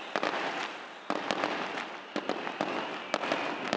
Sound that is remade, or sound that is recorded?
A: recorded